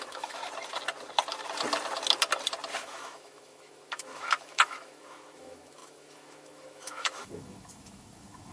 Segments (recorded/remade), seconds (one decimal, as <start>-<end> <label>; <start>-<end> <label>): 0.0-0.4 remade; 0.4-2.8 recorded; 2.8-8.5 remade